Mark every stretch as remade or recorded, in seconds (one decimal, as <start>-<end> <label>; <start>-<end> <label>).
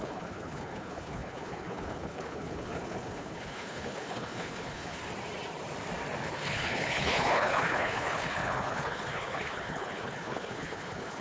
0.0-5.0 remade; 5.0-6.2 recorded; 6.2-11.2 remade